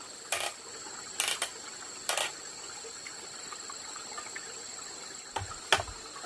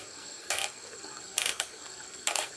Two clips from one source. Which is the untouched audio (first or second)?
first